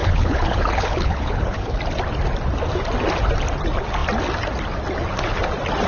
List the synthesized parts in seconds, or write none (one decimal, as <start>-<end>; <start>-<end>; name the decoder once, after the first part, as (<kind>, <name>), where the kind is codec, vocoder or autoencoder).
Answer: 0.0-1.8 (codec, HILCodec)